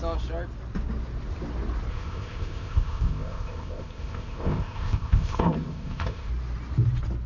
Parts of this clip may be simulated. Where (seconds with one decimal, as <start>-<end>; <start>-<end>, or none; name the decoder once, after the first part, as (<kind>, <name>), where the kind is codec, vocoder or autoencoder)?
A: 1.9-6.3 (codec, ZipCodec)